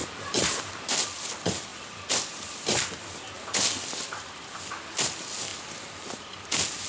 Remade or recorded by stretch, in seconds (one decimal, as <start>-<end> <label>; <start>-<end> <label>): 0.0-0.9 remade; 0.9-6.9 recorded